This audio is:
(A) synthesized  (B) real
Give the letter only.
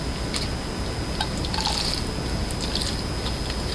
B